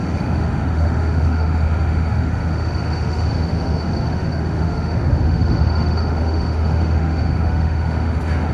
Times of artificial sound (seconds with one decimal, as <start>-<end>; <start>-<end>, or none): 0.0-8.5